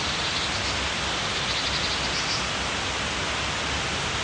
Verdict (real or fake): real